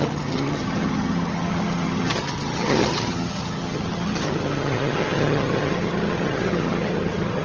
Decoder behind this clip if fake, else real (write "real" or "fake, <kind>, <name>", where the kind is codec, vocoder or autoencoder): fake, vocoder, HiFi-GAN